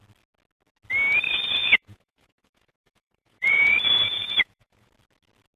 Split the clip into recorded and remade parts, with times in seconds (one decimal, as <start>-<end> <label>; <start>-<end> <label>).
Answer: 0.0-1.6 recorded; 1.6-4.9 remade; 4.9-5.6 recorded